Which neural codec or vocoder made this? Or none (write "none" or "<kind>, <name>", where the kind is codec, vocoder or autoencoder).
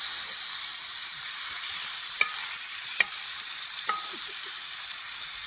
vocoder, BigVGAN v2